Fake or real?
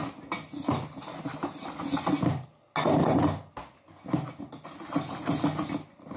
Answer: real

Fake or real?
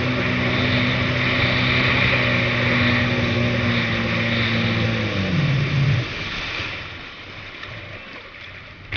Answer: real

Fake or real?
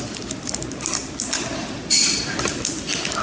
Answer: real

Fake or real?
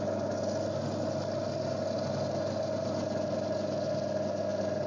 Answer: real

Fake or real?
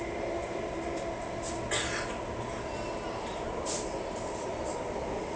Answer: real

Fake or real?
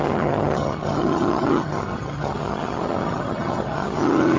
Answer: fake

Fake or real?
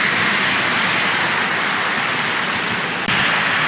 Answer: real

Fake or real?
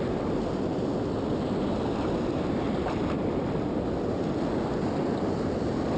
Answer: real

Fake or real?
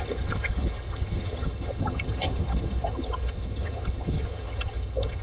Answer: fake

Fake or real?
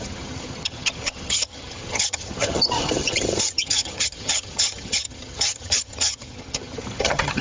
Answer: fake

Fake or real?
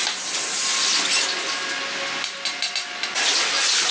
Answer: real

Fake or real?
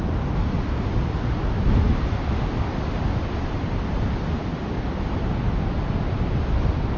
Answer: real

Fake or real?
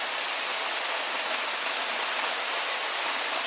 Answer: real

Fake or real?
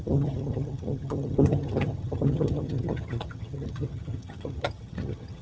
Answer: fake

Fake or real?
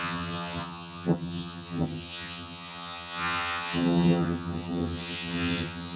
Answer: fake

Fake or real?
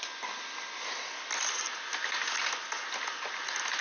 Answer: real